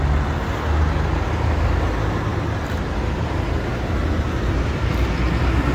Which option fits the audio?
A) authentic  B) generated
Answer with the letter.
A